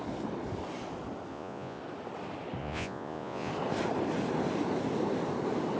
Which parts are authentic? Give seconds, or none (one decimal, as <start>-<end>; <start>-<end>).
0.0-1.3; 1.8-2.6; 3.5-5.8